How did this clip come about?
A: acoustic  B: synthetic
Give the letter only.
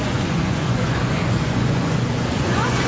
B